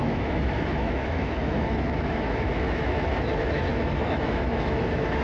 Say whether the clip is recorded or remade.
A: remade